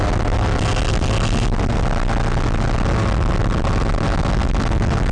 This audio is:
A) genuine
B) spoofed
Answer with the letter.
A